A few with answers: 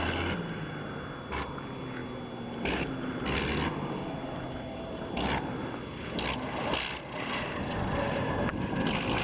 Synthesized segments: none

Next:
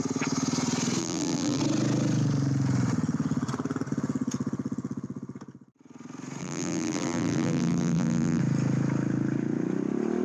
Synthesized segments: 1.0-1.6 (vocoder, BigVGAN v2); 6.4-8.4

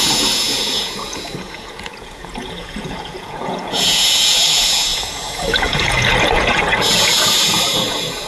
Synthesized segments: 0.0-8.3 (vocoder, Vocos)

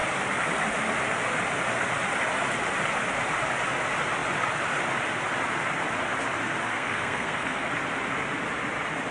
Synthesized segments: 6.7-7.7 (codec, SNAC)

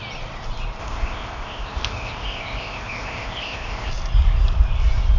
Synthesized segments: 0.8-3.9 (codec, ZipCodec)

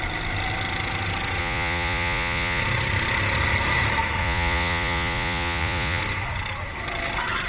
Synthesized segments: 1.4-2.6 (vocoder, Vocos); 4.2-6.0

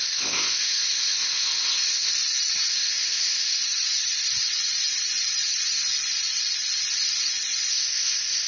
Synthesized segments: 0.0-2.1 (codec, ZipCodec); 2.7-3.6; 7.7-8.5

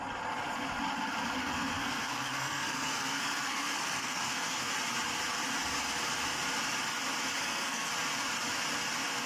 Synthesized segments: 1.4-4.7 (codec, SNAC); 7.4-7.9